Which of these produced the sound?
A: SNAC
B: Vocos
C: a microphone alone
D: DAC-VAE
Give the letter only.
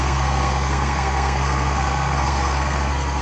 A